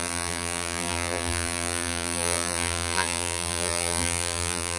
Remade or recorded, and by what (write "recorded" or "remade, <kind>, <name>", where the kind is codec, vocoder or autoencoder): remade, vocoder, BigVGAN v2